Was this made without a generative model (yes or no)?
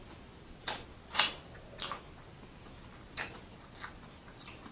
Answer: yes